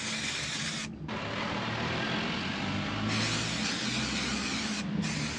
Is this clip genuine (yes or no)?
yes